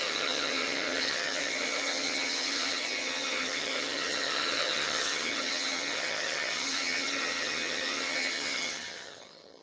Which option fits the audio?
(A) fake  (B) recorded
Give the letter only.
A